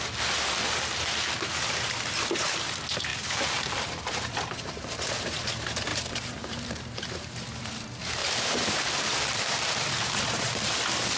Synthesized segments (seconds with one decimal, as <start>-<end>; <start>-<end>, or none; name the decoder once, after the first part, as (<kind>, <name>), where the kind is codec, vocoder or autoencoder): 3.1-5.2 (vocoder, BigVGAN v2); 5.9-7.4; 8.2-10.7

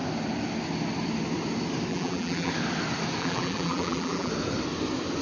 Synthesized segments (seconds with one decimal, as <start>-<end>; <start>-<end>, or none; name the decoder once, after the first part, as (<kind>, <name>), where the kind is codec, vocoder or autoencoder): 1.9-2.5 (vocoder, BigVGAN v2); 3.2-4.3

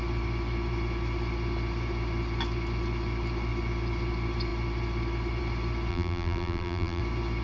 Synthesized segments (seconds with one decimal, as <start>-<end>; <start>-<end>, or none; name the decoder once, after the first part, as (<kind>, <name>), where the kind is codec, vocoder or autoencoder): 5.9-7.0 (vocoder, BigVGAN v2)

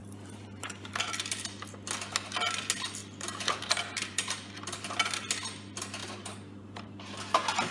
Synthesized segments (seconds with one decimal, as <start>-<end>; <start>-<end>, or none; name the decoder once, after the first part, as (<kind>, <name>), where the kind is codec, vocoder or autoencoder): 0.0-0.9 (vocoder, BigVGAN v2); 3.0-4.9; 6.0-7.1

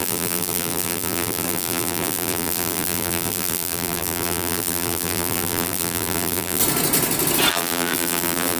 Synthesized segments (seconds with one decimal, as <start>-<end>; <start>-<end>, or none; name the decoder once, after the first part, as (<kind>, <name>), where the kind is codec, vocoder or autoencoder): 0.0-6.6 (vocoder, BigVGAN v2); 7.5-8.6

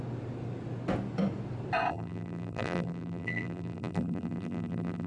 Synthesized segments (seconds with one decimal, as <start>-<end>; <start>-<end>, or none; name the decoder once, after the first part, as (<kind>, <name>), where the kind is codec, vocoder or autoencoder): 1.9-5.1 (vocoder, BigVGAN v2)

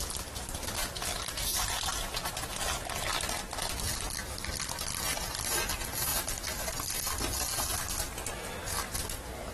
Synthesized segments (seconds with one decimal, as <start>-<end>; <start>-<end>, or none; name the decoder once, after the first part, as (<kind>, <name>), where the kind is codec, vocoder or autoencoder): 0.8-1.4 (vocoder, BigVGAN v2); 6.1-6.6; 7.5-8.2

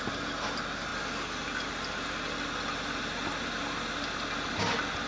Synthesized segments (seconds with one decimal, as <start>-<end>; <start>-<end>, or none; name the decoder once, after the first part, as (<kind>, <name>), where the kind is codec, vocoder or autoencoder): none